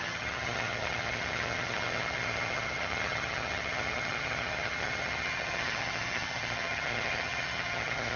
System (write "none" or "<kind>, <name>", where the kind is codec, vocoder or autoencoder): vocoder, HiFi-GAN